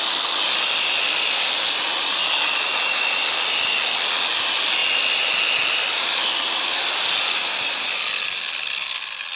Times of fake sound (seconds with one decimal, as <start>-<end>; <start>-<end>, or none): none